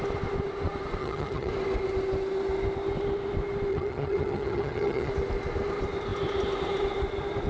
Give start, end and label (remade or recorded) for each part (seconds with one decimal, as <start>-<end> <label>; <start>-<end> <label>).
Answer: 0.0-1.0 recorded; 1.0-1.5 remade; 1.5-3.7 recorded; 3.7-5.1 remade; 5.1-7.5 recorded